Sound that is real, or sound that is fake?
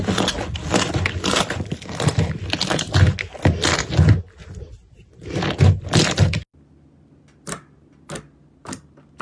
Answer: real